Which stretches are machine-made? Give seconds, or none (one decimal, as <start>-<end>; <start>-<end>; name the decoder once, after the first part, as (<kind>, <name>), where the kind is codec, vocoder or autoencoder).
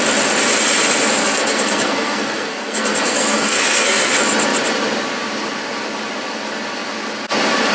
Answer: 1.2-4.1 (codec, SNAC)